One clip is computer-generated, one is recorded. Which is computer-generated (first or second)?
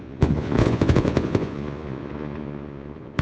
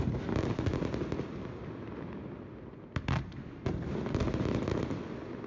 first